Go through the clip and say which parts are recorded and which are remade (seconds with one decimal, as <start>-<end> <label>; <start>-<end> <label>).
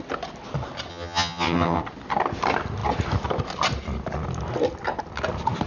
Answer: 0.0-0.9 recorded; 0.9-1.8 remade; 1.8-5.7 recorded